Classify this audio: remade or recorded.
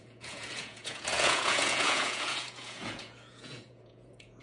remade